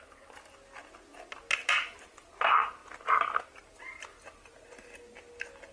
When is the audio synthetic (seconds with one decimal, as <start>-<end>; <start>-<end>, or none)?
none